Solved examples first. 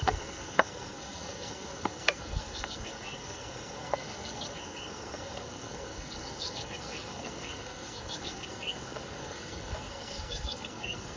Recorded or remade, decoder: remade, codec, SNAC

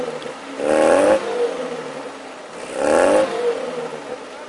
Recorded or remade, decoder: recorded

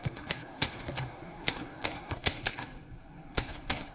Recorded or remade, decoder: remade, codec, SNAC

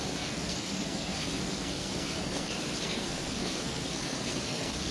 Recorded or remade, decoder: remade, codec, SNAC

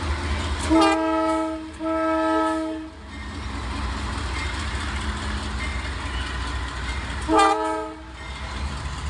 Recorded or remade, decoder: recorded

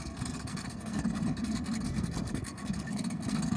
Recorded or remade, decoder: remade, codec, SNAC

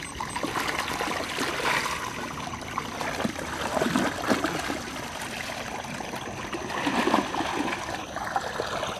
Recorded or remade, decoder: recorded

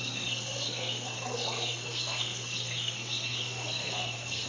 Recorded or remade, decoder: remade, codec, SNAC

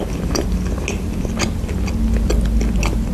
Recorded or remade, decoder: recorded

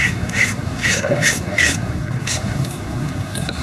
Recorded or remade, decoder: remade, codec, SNAC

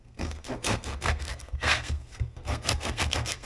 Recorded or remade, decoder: remade, codec, SNAC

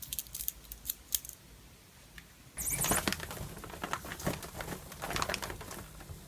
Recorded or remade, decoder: recorded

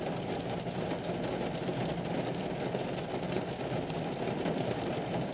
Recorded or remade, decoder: recorded